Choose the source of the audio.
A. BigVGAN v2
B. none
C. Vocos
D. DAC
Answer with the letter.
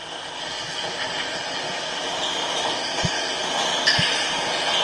B